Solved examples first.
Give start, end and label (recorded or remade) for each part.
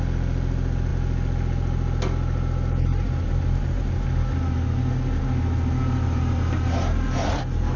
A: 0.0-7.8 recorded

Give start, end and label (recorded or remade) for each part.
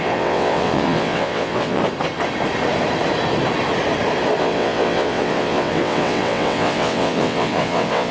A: 0.0-1.8 remade; 1.8-4.4 recorded; 4.4-8.1 remade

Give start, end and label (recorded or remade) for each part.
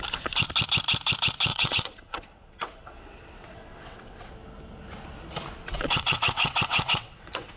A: 0.0-1.5 recorded; 1.5-4.3 remade; 4.3-5.6 recorded; 5.6-7.6 remade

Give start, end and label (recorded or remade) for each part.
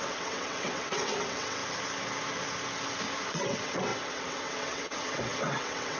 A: 0.0-1.6 remade; 1.6-3.3 recorded; 3.3-6.0 remade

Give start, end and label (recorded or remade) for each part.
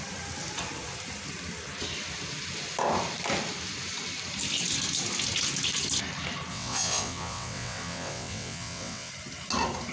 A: 0.0-6.5 recorded; 6.5-9.1 remade; 9.1-9.9 recorded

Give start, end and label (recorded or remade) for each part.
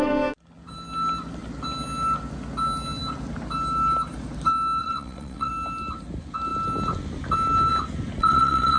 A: 0.0-4.8 recorded; 4.8-5.5 remade; 5.5-8.2 recorded; 8.2-8.8 remade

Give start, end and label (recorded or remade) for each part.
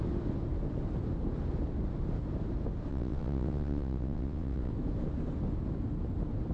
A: 0.0-2.9 recorded; 2.9-4.7 remade; 4.7-6.5 recorded